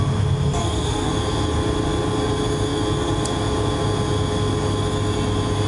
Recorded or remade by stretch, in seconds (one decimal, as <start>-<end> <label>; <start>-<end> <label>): 0.0-0.6 recorded; 0.6-1.1 remade; 1.1-5.7 recorded